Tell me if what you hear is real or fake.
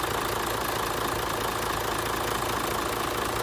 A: real